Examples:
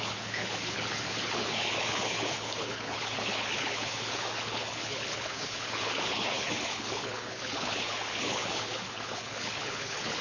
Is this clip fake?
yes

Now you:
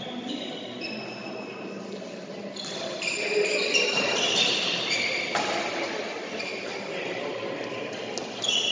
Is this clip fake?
no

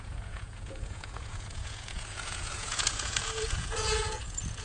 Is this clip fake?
yes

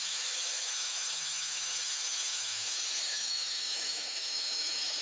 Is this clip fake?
yes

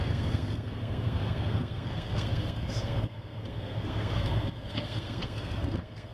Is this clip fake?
yes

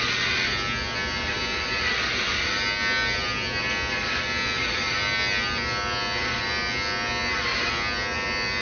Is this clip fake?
no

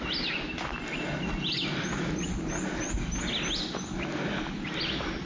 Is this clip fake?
no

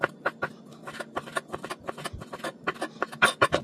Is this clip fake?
no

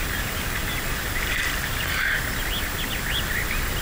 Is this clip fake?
yes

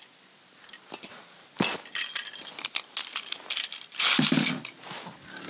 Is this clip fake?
no